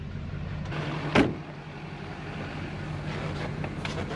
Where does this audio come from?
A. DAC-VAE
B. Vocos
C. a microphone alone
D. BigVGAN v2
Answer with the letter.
C